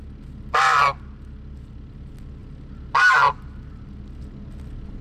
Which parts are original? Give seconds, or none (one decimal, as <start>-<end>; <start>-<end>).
0.0-5.0